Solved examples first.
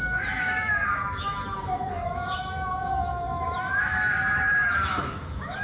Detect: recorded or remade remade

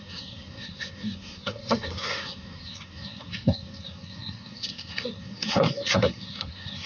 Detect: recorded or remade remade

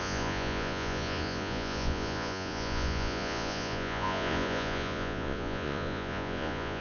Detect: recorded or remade remade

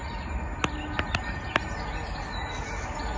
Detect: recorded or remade recorded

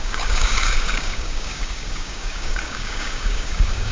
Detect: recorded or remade remade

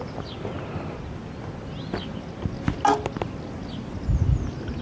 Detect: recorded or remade recorded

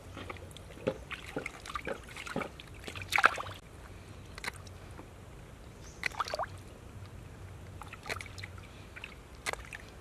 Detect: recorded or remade recorded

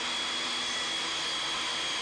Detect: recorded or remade recorded